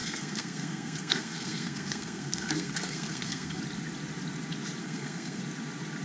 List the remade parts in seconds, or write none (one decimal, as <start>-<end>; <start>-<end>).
0.0-3.6; 4.8-5.4